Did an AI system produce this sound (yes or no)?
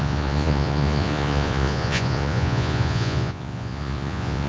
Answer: yes